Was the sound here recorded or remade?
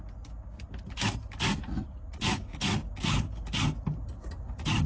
recorded